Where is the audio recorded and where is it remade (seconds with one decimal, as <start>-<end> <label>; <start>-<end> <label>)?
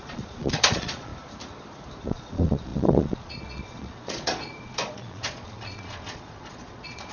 0.0-1.1 remade; 1.1-2.0 recorded; 2.0-7.1 remade